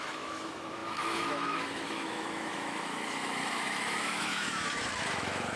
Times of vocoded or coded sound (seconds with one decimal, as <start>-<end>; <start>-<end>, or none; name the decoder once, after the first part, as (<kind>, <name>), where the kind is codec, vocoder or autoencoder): 0.0-5.6 (autoencoder, DAC-VAE)